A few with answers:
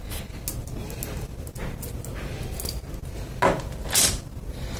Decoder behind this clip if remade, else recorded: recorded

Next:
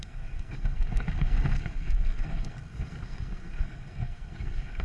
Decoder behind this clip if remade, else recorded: remade, codec, SNAC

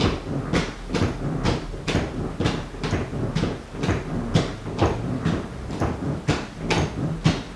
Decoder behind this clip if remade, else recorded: recorded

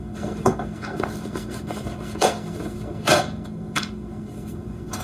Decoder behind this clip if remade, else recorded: remade, codec, SNAC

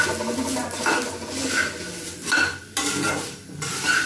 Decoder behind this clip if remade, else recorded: recorded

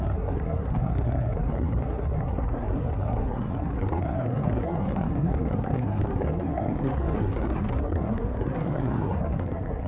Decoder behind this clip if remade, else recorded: remade, codec, SNAC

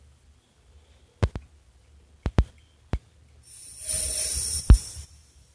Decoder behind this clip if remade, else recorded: recorded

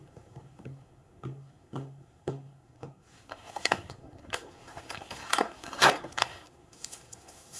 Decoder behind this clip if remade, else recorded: remade, codec, SNAC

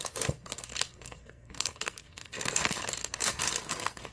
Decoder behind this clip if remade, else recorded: remade, codec, SNAC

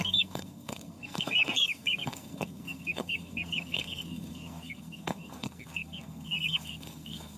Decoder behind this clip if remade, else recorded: remade, codec, SNAC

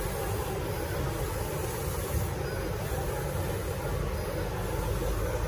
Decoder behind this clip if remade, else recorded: recorded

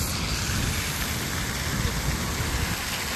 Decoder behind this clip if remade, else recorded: recorded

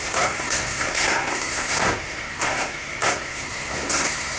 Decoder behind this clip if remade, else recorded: remade, codec, SNAC